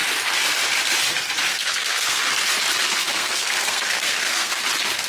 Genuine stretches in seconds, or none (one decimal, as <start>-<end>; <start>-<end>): 0.0-1.5; 2.2-3.0; 4.6-5.1